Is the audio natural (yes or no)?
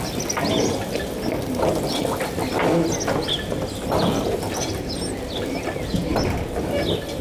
yes